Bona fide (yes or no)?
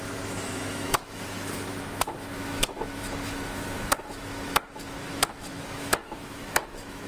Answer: no